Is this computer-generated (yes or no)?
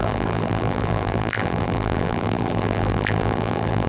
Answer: yes